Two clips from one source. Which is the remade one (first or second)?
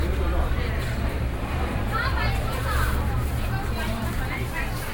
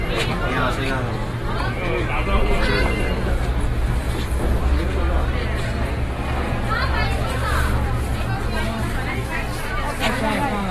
first